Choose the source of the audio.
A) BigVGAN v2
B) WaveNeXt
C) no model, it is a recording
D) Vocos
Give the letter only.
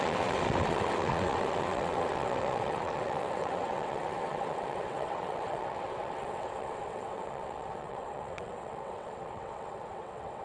B